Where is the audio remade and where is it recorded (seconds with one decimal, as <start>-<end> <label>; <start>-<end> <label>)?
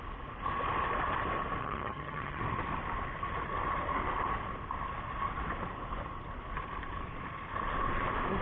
0.0-1.6 recorded; 1.6-2.4 remade; 2.4-8.4 recorded